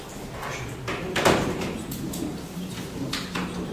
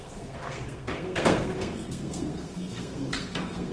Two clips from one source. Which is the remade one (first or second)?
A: second